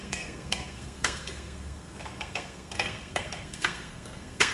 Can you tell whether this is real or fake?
fake